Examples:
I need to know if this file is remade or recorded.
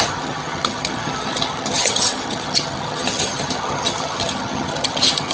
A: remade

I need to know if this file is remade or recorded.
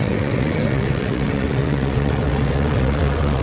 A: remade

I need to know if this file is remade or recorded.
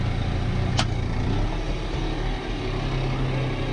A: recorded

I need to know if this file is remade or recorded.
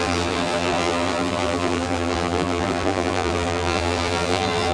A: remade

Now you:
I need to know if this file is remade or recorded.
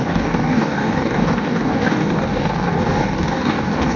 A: remade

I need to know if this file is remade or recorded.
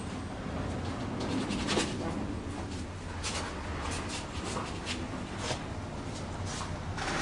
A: recorded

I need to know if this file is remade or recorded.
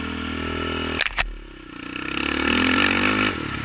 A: recorded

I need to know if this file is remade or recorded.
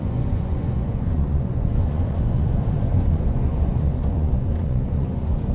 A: remade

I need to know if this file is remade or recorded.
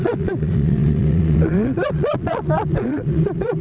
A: remade